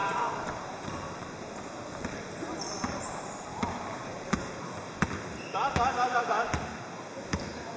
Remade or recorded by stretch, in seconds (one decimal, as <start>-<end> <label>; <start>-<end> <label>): 0.0-4.6 remade; 4.6-7.8 recorded